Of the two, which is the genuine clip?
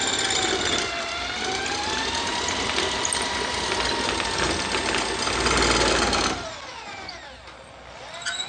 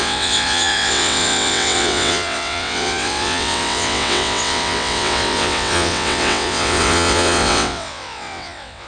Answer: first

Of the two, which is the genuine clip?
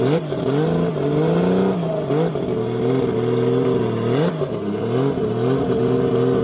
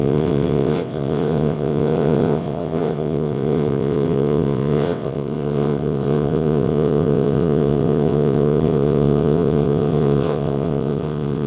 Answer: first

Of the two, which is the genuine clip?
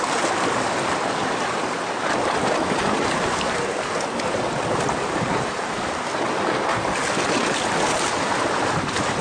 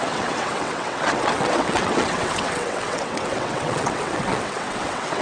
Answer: first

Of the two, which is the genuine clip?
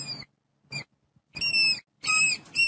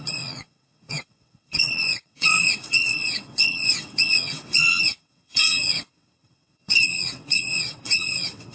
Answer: first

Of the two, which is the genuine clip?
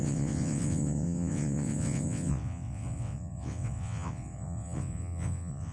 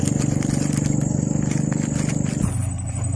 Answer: second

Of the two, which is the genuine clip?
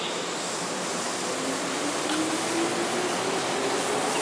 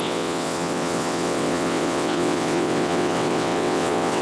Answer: first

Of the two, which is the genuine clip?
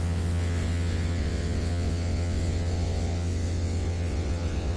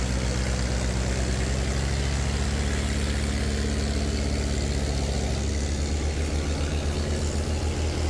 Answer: second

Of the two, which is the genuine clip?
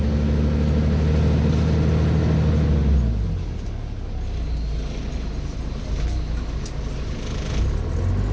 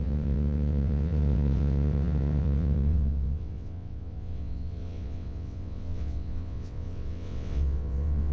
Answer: first